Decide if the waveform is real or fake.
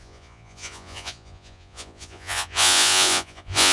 fake